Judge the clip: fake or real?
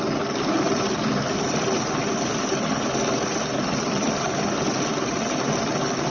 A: real